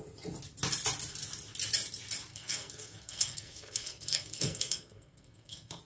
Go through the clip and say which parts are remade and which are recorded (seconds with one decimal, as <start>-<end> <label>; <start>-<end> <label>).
0.0-2.3 recorded; 2.3-5.8 remade